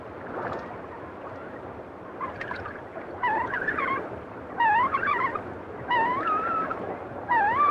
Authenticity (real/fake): real